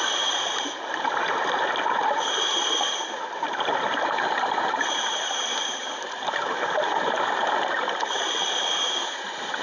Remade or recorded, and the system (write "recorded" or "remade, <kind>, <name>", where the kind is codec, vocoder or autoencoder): remade, vocoder, BigVGAN v2